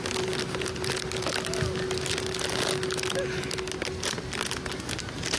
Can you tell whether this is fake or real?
real